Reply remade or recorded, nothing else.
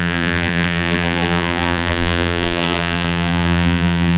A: remade